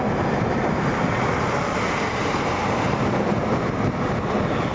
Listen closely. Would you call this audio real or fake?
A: fake